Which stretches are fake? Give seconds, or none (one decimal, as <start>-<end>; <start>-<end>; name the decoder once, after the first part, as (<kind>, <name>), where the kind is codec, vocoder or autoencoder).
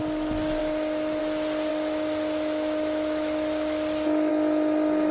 0.6-1.2 (autoencoder, DAC-VAE); 1.7-4.3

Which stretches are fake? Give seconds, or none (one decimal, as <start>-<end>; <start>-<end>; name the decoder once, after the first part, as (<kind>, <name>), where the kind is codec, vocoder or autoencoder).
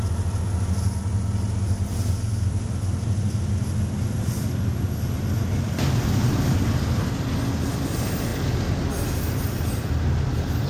none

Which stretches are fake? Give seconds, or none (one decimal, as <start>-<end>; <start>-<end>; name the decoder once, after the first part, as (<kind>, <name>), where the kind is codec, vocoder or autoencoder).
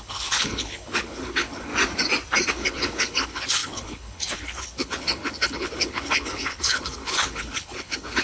0.0-1.7 (codec, HILCodec); 2.5-8.2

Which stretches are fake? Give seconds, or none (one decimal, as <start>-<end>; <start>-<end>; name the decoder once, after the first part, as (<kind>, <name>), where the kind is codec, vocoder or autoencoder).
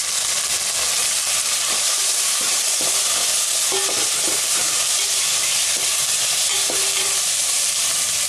1.0-3.3 (vocoder, BigVGAN v2); 4.1-8.3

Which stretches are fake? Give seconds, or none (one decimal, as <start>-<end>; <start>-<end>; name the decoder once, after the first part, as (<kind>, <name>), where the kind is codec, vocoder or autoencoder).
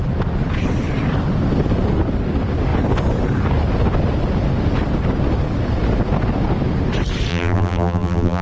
7.3-8.4 (vocoder, BigVGAN v2)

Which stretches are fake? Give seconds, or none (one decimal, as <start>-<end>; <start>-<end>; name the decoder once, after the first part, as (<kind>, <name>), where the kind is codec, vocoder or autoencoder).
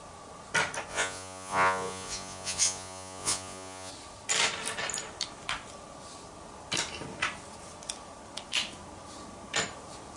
0.9-3.9 (vocoder, Vocos)